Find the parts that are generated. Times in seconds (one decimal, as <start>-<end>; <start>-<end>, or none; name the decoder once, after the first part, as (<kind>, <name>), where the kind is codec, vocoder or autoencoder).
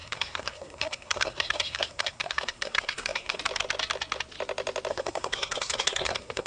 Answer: 0.0-3.4 (codec, SNAC); 4.9-6.5